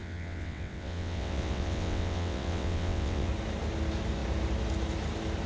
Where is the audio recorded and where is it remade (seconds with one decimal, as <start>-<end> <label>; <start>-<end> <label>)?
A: 0.0-3.3 remade; 3.3-5.5 recorded